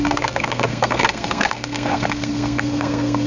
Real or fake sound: fake